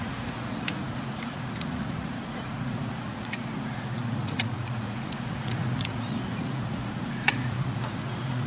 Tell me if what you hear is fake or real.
fake